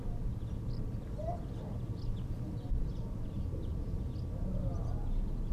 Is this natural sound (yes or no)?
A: yes